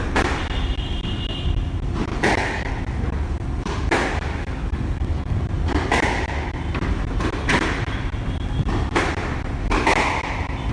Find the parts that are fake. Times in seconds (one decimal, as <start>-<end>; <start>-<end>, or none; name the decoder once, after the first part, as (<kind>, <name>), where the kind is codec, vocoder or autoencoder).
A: 2.1-2.7 (codec, DAC); 4.0-5.4